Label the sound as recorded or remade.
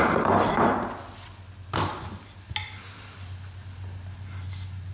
recorded